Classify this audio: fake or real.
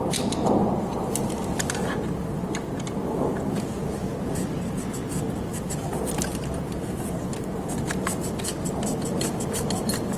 real